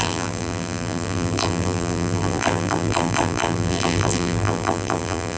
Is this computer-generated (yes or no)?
yes